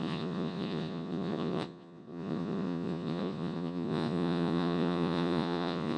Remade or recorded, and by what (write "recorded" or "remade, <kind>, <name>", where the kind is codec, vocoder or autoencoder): remade, vocoder, Vocos